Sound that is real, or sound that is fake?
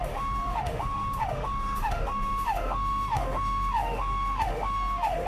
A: fake